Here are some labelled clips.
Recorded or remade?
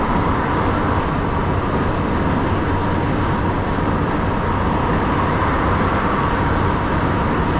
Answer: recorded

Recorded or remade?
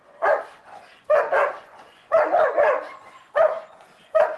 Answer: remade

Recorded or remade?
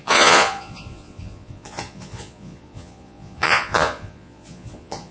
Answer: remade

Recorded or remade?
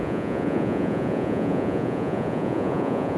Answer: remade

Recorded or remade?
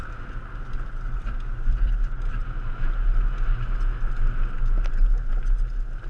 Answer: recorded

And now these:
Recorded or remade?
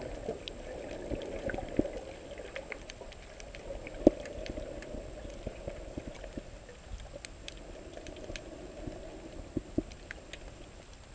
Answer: recorded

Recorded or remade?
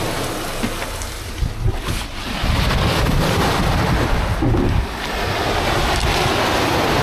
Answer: recorded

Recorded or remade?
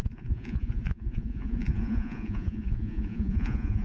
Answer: remade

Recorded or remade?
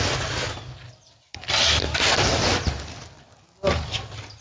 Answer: recorded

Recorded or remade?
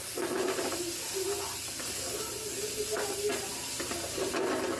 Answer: recorded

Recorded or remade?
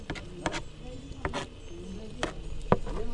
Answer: recorded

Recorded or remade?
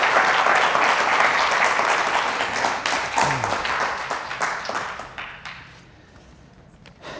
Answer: recorded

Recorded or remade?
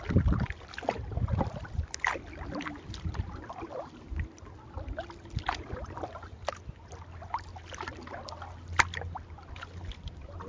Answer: recorded